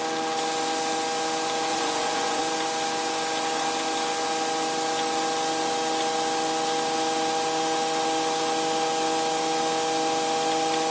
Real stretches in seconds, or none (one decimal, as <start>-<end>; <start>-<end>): 0.0-1.7; 2.4-10.9